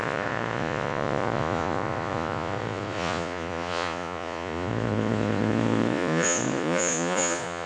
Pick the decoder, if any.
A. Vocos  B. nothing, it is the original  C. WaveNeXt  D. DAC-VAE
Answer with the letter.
A